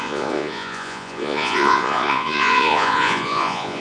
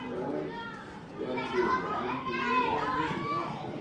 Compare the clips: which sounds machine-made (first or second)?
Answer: first